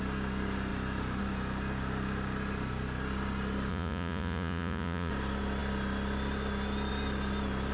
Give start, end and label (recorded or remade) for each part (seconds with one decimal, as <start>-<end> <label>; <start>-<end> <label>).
0.0-3.7 recorded; 3.7-5.1 remade; 5.1-7.7 recorded